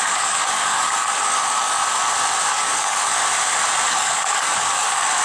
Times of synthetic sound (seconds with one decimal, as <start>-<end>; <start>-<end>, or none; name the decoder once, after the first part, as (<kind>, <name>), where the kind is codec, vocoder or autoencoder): 0.0-1.8 (codec, DAC); 2.5-3.1; 3.9-5.2